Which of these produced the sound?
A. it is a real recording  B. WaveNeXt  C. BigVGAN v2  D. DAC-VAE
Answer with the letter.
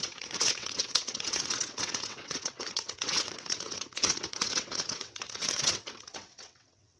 B